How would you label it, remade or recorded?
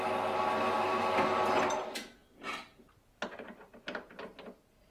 recorded